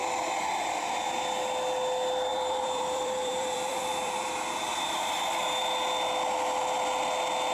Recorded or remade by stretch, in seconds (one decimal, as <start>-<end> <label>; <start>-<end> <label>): 0.0-0.7 remade; 0.7-2.3 recorded; 2.3-5.6 remade; 5.6-7.5 recorded